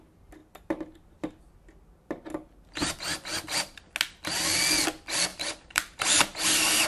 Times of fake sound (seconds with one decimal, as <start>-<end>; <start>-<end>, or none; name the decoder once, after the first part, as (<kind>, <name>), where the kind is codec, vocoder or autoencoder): 5.3-6.9 (vocoder, BigVGAN v2)